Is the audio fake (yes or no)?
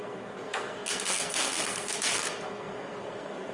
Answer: yes